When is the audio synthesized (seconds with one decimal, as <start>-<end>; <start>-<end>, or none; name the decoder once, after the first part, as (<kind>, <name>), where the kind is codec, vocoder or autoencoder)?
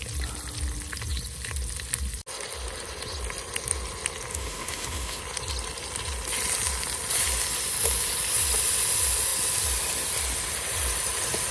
4.3-5.2 (autoencoder, DAC-VAE)